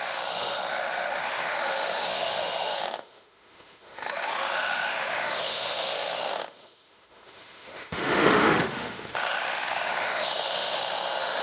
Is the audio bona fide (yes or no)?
no